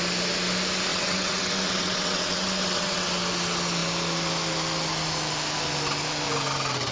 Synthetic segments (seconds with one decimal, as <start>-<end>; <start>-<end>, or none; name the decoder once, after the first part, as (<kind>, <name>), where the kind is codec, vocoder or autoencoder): 0.9-3.1 (vocoder, WaveNeXt)